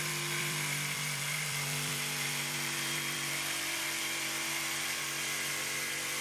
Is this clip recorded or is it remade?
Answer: remade